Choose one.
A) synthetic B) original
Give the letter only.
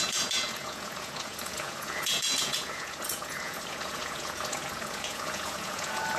A